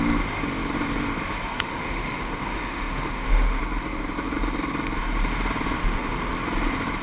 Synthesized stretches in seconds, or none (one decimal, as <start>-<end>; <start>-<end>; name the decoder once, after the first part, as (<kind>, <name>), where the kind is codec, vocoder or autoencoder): 1.5-3.6 (autoencoder, DAC-VAE); 5.8-6.3